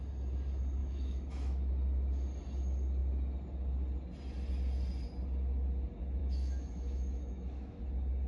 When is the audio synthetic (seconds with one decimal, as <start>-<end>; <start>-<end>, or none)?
0.8-1.7; 6.2-7.8